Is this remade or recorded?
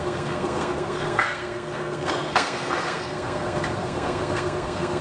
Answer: remade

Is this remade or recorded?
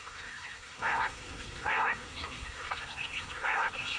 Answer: remade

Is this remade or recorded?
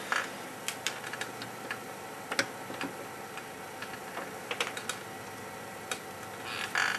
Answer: recorded